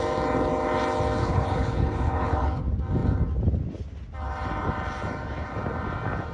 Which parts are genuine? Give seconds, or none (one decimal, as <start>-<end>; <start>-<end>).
0.0-1.2; 2.6-6.3